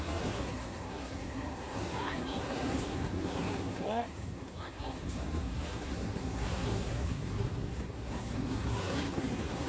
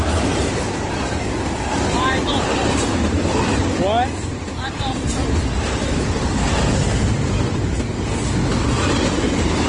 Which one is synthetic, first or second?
first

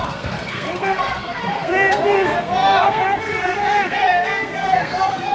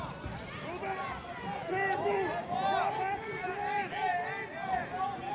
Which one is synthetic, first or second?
first